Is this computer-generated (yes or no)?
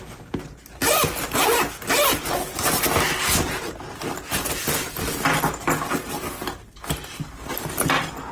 no